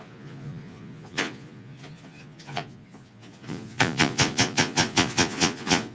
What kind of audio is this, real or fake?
fake